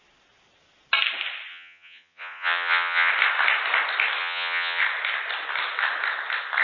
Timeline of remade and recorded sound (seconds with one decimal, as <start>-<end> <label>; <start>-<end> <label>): 0.0-1.5 recorded; 1.5-3.1 remade; 3.1-4.2 recorded; 4.2-4.8 remade; 4.8-6.6 recorded